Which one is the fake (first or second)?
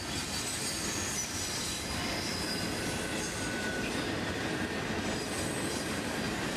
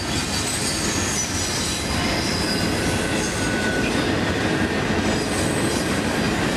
first